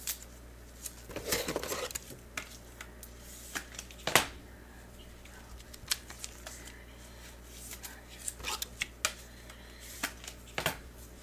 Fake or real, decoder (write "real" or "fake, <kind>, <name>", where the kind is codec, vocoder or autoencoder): real